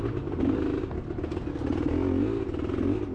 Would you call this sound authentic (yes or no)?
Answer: yes